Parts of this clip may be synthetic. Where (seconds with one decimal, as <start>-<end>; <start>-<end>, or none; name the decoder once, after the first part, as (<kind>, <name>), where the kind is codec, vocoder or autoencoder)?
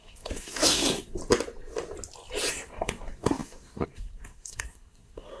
0.0-1.2 (codec, SNAC); 2.5-5.4